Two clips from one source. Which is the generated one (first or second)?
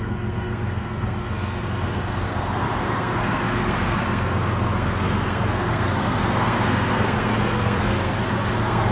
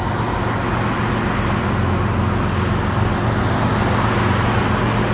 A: first